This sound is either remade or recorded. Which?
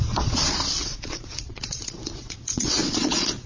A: remade